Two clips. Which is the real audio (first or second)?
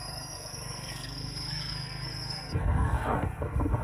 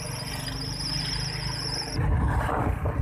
second